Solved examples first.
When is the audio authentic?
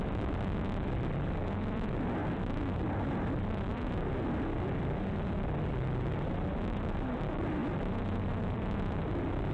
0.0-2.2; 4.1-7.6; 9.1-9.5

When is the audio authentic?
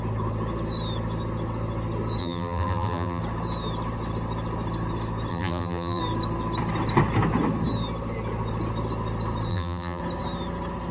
0.0-2.2; 3.2-5.3; 6.0-9.5; 10.0-10.9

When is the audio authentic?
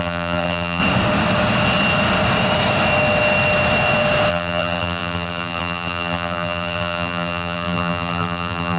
0.8-4.3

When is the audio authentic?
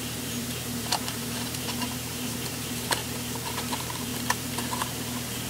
3.0-3.5; 4.1-5.5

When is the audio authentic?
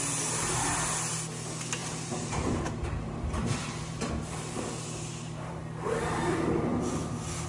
0.0-1.8; 5.6-7.5